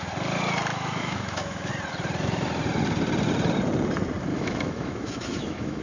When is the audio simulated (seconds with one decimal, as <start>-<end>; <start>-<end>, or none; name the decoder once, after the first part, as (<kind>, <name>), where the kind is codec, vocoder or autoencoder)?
0.7-1.7 (autoencoder, DAC-VAE); 4.3-5.8